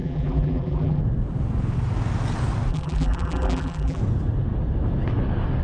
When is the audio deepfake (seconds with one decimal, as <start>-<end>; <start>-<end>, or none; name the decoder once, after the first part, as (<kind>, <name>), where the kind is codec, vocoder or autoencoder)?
0.0-1.0 (vocoder, BigVGAN v2); 2.7-4.0